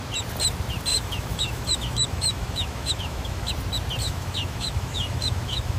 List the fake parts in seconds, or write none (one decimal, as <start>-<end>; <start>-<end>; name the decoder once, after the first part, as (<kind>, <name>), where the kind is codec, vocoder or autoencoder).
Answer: 0.9-3.5 (autoencoder, DAC-VAE); 4.0-5.8